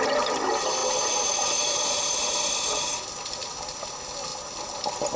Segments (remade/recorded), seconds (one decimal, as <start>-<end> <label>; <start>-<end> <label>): 0.0-5.2 recorded